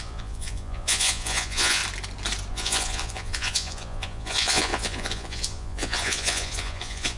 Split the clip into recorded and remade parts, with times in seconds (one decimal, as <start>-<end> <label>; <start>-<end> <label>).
0.0-1.8 remade; 1.8-2.5 recorded; 2.5-7.2 remade